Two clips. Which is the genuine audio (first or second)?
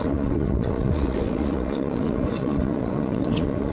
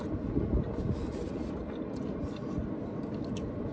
second